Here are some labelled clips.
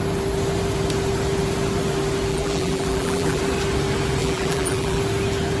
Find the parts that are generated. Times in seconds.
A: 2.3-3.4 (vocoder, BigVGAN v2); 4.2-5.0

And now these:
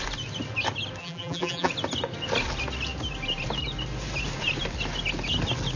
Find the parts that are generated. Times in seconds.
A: 1.0-1.7 (vocoder, BigVGAN v2)

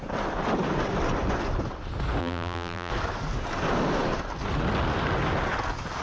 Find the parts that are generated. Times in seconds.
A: 2.2-2.9 (vocoder, BigVGAN v2)

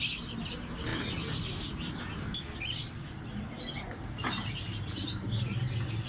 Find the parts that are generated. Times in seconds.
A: none

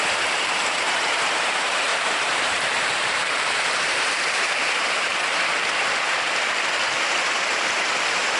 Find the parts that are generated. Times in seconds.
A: 0.0-5.1 (vocoder, BigVGAN v2); 7.5-8.4